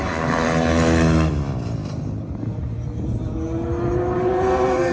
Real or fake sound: real